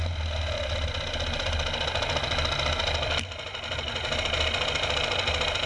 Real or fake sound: real